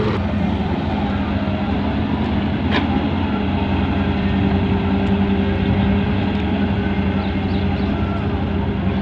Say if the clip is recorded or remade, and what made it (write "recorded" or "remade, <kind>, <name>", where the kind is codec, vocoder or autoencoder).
recorded